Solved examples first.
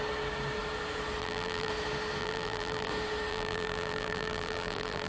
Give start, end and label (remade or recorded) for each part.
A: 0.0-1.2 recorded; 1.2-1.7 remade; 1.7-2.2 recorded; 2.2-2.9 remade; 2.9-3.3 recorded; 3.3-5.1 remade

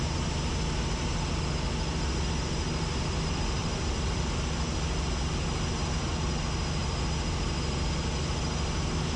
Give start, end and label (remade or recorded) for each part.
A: 0.0-3.6 recorded; 3.6-4.2 remade; 4.2-9.2 recorded

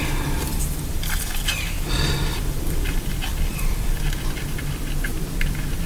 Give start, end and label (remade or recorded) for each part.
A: 0.0-0.5 recorded; 0.5-4.0 remade; 4.0-5.9 recorded

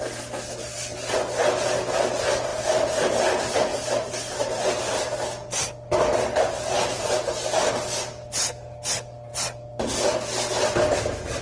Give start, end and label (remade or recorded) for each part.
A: 0.0-2.5 recorded; 2.5-3.1 remade; 3.1-3.7 recorded; 3.7-4.8 remade; 4.8-11.4 recorded

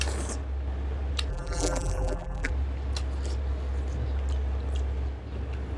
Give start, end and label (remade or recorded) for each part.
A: 0.0-1.3 recorded; 1.3-2.5 remade; 2.5-5.8 recorded

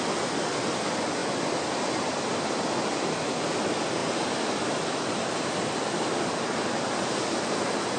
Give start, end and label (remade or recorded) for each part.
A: 0.0-1.2 recorded; 1.2-2.7 remade; 2.7-4.0 recorded; 4.0-6.6 remade; 6.6-8.0 recorded

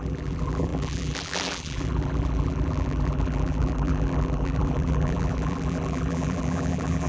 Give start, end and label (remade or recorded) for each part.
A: 0.0-7.1 remade